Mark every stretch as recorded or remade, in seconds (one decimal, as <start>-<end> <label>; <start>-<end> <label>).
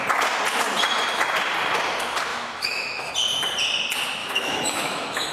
0.0-2.3 recorded; 2.3-3.1 remade; 3.1-4.2 recorded; 4.2-5.3 remade